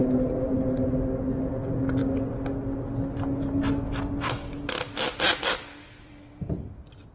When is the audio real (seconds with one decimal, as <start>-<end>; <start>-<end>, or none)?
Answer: 0.0-7.1